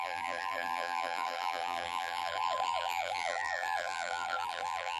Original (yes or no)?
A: no